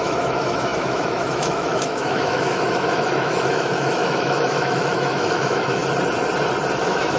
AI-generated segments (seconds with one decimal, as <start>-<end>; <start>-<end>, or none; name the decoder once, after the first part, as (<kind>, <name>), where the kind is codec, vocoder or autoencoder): 0.0-5.8 (autoencoder, DAC-VAE); 6.8-7.2